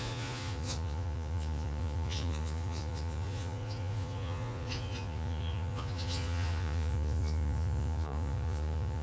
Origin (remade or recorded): remade